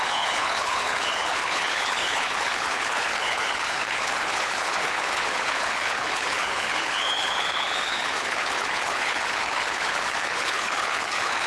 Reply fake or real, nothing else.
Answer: fake